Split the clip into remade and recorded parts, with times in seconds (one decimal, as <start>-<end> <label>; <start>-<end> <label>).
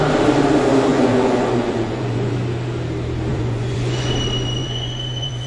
0.0-0.9 recorded; 0.9-2.3 remade; 2.3-3.3 recorded; 3.3-4.1 remade; 4.1-4.6 recorded; 4.6-5.5 remade